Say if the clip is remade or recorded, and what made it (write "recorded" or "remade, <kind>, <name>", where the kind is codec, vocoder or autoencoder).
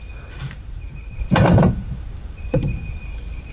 remade, vocoder, BigVGAN v2